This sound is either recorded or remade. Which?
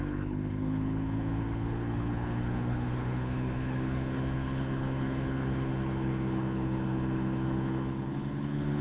remade